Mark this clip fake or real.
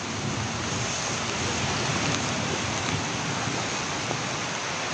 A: real